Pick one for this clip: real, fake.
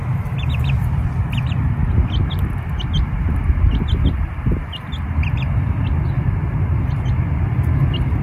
real